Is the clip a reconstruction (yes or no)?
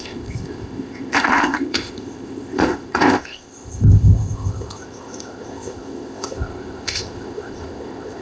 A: yes